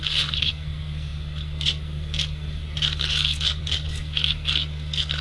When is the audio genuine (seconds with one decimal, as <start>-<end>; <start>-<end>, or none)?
none